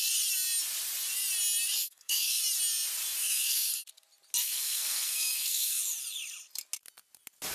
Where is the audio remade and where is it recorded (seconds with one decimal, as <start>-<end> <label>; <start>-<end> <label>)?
0.0-1.8 recorded; 1.8-2.4 remade; 2.4-3.2 recorded; 3.2-3.7 remade; 3.7-4.4 recorded; 4.4-5.8 remade; 5.8-7.5 recorded